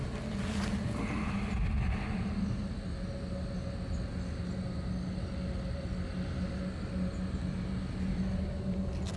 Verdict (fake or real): real